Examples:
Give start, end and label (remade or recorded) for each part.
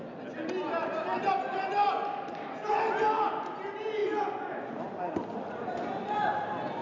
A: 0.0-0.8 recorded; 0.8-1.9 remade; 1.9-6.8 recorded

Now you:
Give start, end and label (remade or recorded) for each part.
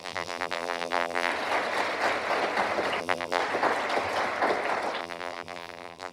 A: 0.0-1.3 remade; 1.3-3.0 recorded; 3.0-3.4 remade; 3.4-5.0 recorded; 5.0-6.1 remade